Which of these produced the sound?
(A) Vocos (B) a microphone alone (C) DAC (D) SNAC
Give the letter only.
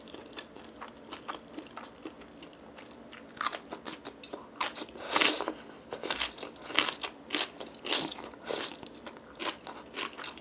B